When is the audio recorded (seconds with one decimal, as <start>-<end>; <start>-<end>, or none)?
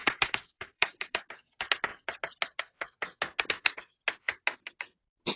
1.3-5.4